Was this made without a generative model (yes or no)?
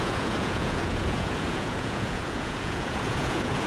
no